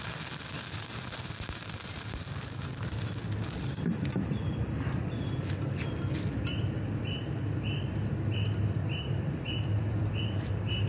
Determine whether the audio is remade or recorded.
remade